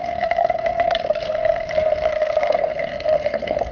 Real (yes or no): no